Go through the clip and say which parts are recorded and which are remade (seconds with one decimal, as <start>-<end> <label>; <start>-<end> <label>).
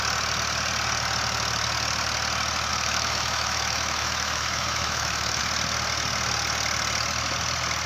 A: 0.0-2.7 recorded; 2.7-5.4 remade; 5.4-7.9 recorded